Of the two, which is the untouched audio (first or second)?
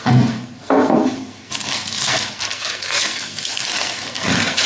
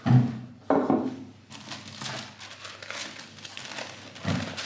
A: second